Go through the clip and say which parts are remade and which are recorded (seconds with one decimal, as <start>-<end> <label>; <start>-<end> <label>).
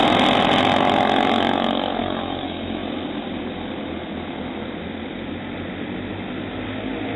0.0-2.0 recorded; 2.0-2.8 remade; 2.8-7.2 recorded